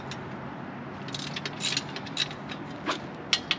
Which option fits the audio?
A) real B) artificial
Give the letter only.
A